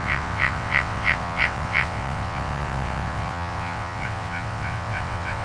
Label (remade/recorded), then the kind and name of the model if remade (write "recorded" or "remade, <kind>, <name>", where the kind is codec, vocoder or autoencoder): remade, vocoder, WaveNeXt